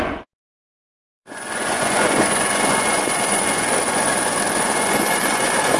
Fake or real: fake